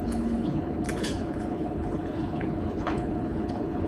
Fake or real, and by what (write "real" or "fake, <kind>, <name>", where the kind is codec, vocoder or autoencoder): fake, codec, HILCodec